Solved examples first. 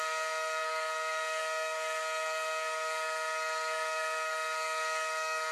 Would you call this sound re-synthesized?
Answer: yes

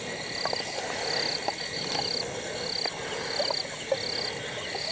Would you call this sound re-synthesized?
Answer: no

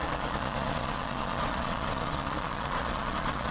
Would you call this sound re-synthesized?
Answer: yes